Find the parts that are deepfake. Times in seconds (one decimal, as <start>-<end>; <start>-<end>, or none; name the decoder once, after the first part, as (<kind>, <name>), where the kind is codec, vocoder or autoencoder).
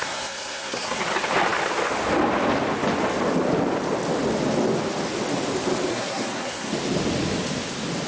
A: 0.0-1.0 (codec, SNAC); 5.9-6.7